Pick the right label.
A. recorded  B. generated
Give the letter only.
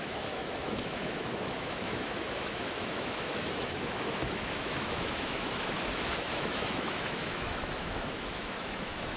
B